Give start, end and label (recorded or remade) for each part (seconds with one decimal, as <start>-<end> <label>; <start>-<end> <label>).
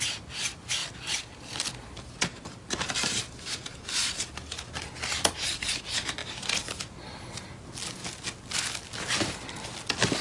0.0-0.8 recorded; 0.8-2.2 remade; 2.2-6.2 recorded; 6.2-6.8 remade; 6.8-10.2 recorded